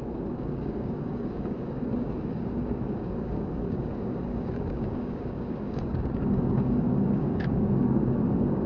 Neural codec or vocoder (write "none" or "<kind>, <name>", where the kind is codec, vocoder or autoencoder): codec, DAC